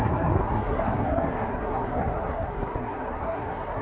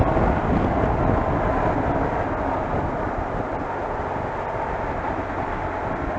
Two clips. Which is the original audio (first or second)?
second